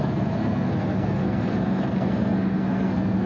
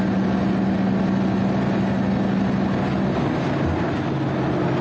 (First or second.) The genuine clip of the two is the second